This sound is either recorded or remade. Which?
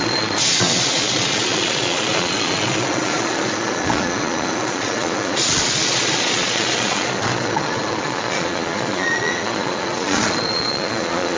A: remade